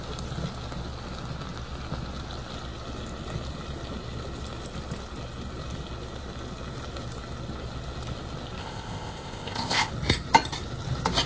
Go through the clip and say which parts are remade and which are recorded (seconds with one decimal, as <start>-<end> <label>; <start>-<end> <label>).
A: 0.0-8.6 recorded; 8.6-9.9 remade; 9.9-11.3 recorded